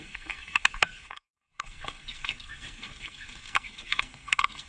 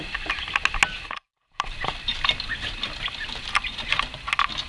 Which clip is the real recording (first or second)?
second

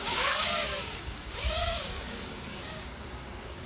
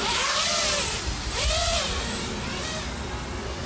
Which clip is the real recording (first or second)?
second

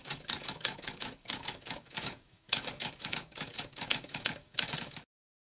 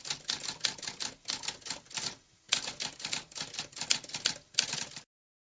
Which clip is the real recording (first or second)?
second